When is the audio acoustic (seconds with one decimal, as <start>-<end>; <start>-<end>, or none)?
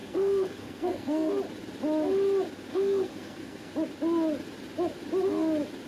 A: 1.3-2.7; 3.7-5.9